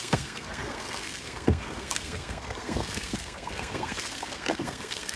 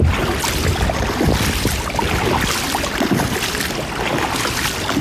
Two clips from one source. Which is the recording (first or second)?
second